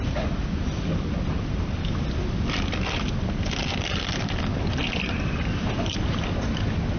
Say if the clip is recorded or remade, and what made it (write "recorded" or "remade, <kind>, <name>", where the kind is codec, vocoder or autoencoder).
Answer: recorded